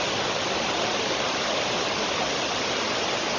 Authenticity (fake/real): real